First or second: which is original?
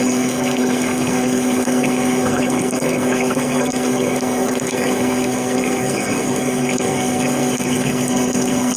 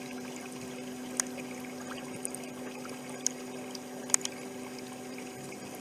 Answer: second